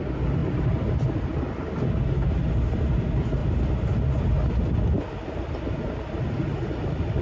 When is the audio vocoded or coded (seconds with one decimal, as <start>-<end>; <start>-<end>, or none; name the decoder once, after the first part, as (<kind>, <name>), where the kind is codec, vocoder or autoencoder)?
0.4-1.5 (vocoder, BigVGAN v2)

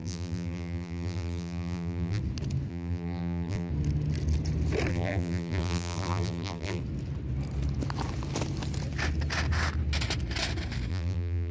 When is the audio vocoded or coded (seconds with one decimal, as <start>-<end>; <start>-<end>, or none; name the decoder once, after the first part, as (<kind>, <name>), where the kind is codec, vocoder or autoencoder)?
0.0-2.2 (vocoder, BigVGAN v2); 2.7-3.7; 4.9-6.8; 10.9-11.5

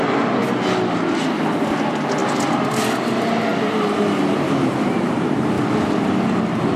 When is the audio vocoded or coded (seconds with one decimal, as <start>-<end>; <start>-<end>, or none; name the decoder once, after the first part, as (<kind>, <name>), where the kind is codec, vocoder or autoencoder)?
2.2-2.8 (vocoder, BigVGAN v2); 3.5-5.5

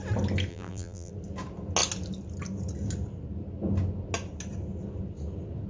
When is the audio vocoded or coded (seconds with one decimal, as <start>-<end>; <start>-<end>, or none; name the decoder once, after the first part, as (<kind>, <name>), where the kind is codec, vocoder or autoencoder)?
0.5-1.1 (vocoder, BigVGAN v2)

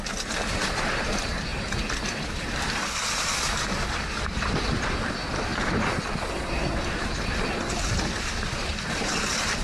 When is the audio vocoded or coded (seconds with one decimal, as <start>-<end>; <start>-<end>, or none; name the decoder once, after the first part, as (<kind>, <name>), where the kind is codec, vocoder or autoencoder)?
0.0-1.5 (vocoder, BigVGAN v2); 2.0-5.5; 6.3-9.6

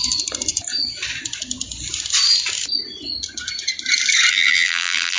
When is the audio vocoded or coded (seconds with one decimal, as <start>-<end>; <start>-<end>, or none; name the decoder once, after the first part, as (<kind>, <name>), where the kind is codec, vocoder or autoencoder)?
4.3-5.2 (vocoder, BigVGAN v2)

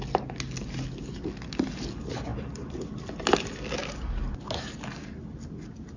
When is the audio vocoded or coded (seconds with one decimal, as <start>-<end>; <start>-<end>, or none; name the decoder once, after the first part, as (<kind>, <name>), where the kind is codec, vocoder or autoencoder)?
none

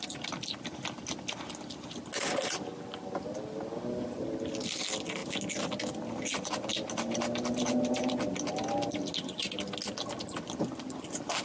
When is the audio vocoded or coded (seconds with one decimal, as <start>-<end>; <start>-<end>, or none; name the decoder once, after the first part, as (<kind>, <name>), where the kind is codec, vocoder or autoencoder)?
none